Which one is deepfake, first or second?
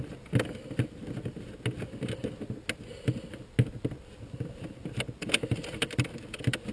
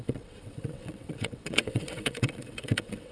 second